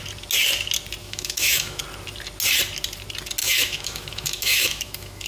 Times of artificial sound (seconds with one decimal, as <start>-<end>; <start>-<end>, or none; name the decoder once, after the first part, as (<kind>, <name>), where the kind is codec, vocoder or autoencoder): 1.0-1.8 (autoencoder, DAC-VAE); 3.4-5.3

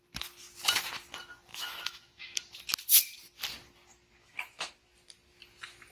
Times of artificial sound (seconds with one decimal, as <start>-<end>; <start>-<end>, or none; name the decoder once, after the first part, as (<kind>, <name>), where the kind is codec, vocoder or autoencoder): 1.5-2.4 (autoencoder, DAC-VAE); 4.2-4.7